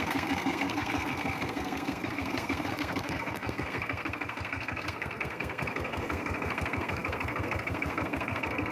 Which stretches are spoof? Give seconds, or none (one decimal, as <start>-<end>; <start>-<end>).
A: 0.0-8.7